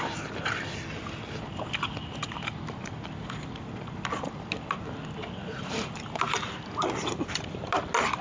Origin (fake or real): real